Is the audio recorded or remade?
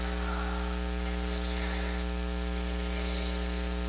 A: recorded